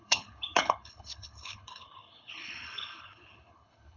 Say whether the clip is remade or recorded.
remade